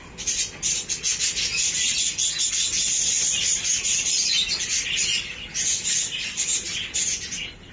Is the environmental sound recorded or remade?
recorded